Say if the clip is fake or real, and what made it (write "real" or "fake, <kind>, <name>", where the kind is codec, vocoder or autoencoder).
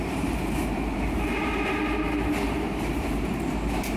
fake, vocoder, BigVGAN v2